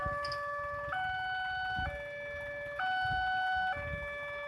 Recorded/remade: recorded